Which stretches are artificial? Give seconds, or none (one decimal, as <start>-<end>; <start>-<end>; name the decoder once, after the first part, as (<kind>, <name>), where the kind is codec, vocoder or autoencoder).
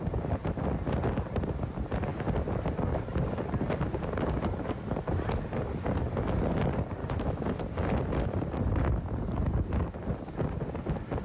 7.0-7.5 (autoencoder, DAC-VAE)